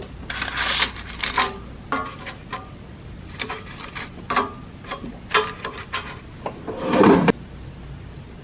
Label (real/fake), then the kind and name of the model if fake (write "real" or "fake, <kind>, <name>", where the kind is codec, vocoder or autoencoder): real